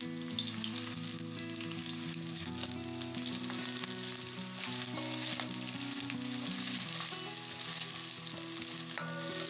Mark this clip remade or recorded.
recorded